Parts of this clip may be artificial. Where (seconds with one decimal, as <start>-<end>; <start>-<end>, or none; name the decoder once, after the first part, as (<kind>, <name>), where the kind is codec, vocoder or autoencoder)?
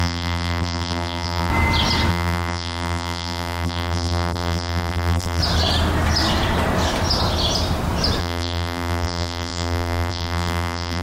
0.0-1.5 (vocoder, BigVGAN v2); 2.1-5.4; 8.2-11.0